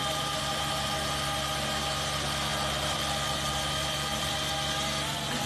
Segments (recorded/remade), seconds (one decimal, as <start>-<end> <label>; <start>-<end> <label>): 0.0-1.1 remade; 1.1-2.5 recorded; 2.5-4.3 remade; 4.3-5.5 recorded